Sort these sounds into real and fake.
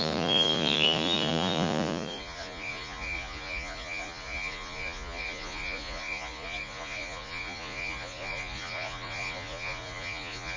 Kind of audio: fake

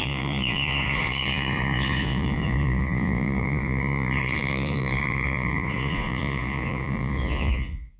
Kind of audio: fake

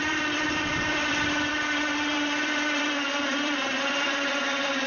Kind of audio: fake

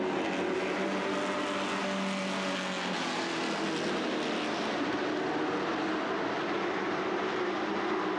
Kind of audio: real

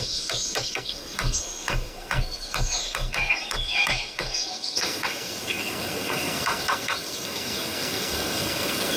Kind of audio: fake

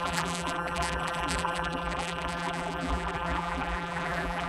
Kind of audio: fake